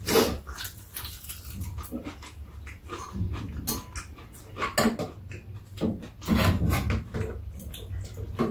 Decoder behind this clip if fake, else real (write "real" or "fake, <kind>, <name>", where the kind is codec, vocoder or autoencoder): real